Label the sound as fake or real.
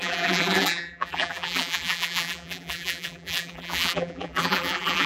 fake